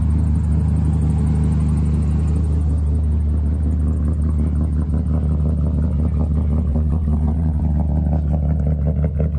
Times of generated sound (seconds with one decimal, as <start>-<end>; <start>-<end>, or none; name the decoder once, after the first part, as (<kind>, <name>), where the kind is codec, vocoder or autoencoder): 6.7-7.6 (vocoder, WaveNeXt)